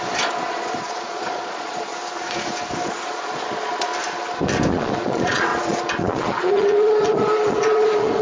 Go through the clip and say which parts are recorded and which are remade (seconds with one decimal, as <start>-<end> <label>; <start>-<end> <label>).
0.0-1.9 remade; 1.9-2.9 recorded; 2.9-3.9 remade; 3.9-4.7 recorded; 4.7-8.2 remade